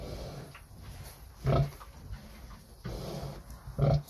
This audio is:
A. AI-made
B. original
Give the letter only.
B